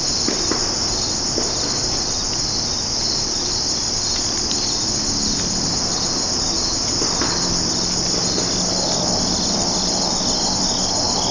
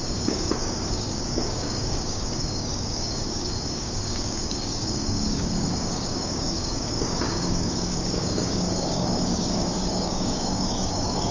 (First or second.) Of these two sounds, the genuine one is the first